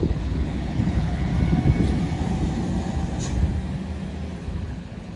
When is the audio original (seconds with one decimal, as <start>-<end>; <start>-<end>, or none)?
1.3-4.4